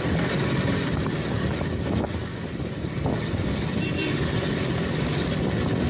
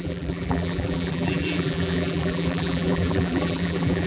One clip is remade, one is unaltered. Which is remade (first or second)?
second